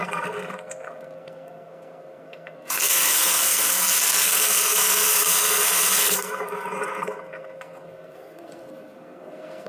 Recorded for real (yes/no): no